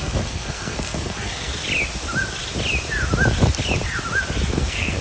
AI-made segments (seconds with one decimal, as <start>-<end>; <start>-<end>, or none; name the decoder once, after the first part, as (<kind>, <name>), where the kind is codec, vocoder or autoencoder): 0.0-1.5 (codec, SNAC); 4.5-5.0

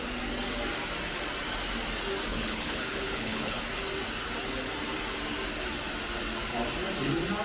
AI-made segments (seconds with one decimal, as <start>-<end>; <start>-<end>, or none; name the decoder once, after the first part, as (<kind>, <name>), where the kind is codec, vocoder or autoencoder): 2.3-3.6 (codec, HILCodec)

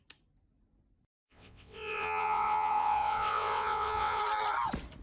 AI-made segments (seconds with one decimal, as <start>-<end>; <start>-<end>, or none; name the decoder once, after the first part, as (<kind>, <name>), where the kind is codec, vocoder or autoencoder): 1.2-4.2 (vocoder, WaveNeXt)

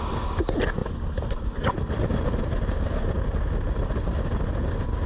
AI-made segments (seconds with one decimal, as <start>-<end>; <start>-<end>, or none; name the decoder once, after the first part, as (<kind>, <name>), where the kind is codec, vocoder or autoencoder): none

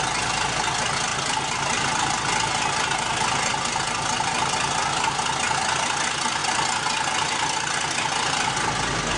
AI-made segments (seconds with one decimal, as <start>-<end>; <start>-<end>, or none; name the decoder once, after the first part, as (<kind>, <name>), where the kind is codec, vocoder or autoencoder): none

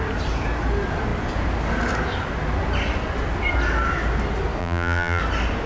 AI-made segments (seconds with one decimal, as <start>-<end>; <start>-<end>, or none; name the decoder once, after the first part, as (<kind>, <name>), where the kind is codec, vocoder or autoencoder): 4.6-5.2 (vocoder, BigVGAN v2)

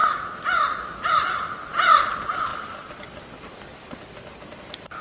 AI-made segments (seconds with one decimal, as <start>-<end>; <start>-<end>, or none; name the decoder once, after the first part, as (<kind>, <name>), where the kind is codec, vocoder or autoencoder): none